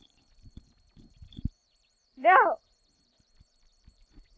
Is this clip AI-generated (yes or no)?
yes